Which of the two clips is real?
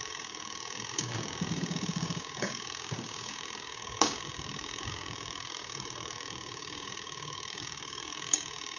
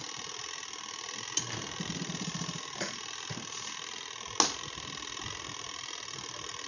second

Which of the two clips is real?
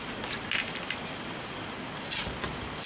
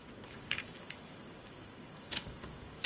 first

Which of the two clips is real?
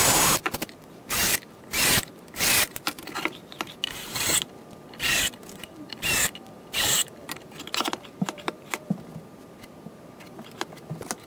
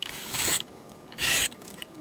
first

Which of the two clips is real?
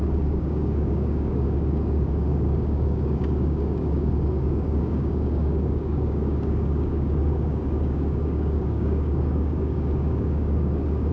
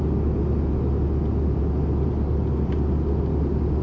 second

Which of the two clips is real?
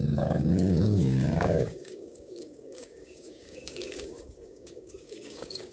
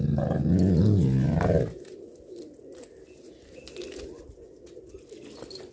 second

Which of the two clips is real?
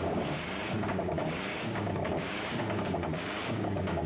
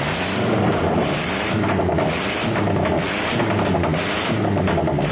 second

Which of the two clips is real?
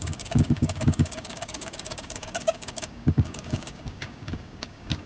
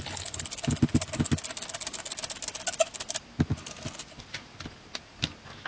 second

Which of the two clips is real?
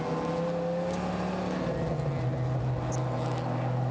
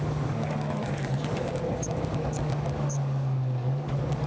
first